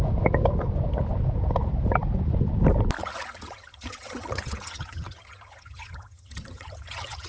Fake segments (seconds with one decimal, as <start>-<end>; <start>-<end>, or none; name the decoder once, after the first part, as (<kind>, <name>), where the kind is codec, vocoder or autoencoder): 3.0-7.3 (vocoder, HiFi-GAN)